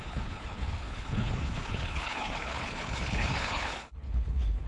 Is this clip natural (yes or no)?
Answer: no